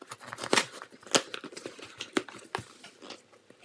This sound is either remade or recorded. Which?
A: recorded